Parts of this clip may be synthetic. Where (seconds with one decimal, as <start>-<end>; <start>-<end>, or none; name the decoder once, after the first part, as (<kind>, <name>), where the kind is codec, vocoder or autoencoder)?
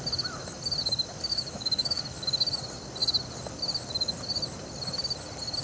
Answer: 1.3-2.0 (autoencoder, DAC-VAE)